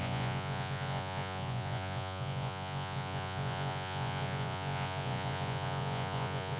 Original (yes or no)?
no